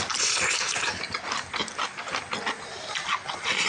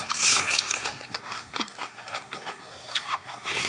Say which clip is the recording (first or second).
first